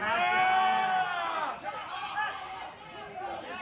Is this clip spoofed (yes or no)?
no